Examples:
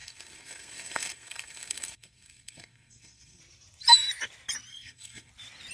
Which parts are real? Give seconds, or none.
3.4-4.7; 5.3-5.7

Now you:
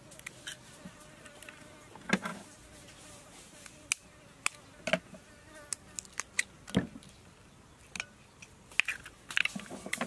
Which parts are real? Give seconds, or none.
0.0-10.1

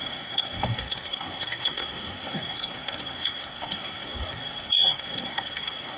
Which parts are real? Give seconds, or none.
none